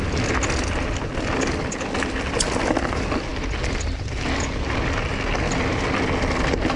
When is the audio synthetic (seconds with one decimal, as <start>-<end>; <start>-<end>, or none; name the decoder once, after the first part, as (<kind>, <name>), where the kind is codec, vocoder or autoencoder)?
none